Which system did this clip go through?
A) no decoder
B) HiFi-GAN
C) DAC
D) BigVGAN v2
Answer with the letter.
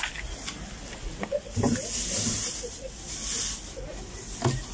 A